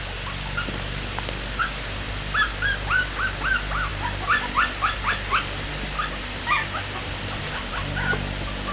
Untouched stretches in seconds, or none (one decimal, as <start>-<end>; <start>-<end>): 0.0-8.7